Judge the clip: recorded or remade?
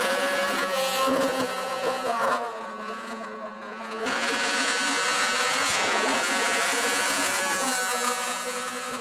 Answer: remade